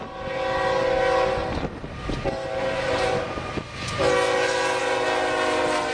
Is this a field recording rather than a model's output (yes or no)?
yes